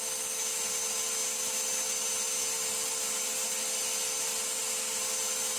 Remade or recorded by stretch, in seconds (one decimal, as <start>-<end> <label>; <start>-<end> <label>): 0.0-5.6 recorded